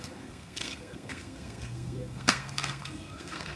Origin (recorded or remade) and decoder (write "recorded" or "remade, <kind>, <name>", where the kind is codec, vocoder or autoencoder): remade, codec, SNAC